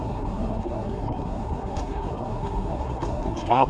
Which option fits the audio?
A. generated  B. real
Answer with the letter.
A